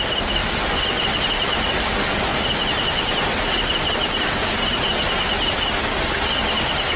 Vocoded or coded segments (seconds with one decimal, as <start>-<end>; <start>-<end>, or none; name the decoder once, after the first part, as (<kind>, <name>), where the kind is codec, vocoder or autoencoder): none